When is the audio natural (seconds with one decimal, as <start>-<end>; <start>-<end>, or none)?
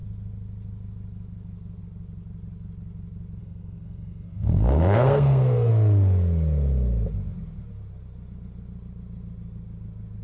0.0-3.4; 5.7-10.2